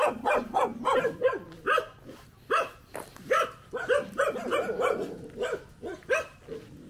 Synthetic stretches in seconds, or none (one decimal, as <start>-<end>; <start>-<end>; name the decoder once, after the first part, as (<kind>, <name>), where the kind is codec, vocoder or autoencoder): none